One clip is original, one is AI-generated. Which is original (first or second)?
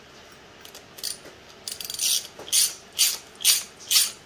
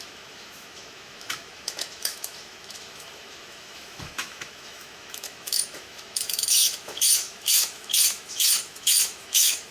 first